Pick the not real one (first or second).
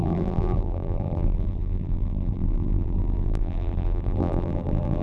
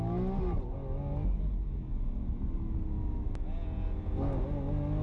first